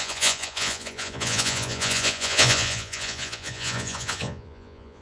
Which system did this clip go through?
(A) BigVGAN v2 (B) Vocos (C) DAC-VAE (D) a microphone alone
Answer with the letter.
B